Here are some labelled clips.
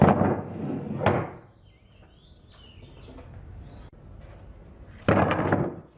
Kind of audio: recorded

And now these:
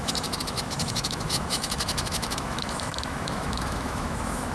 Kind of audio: remade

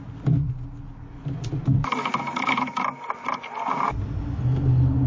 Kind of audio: recorded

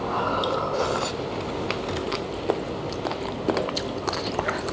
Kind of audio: recorded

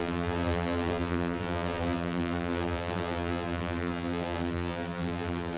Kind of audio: remade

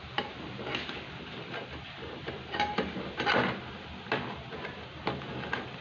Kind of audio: recorded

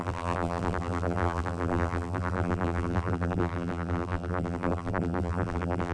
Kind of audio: remade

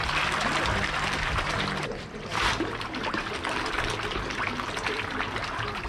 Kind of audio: recorded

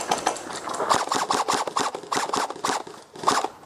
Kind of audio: recorded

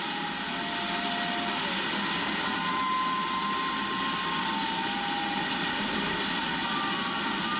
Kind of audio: recorded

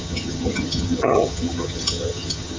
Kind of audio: remade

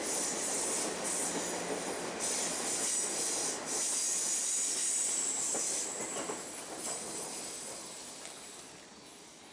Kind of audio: recorded